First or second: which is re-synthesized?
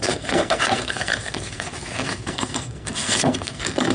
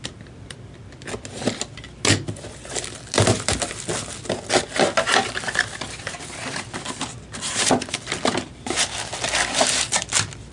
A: first